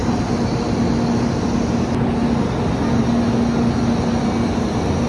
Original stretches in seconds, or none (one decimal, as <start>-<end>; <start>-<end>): 0.0-5.1